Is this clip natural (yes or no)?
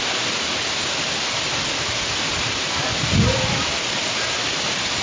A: yes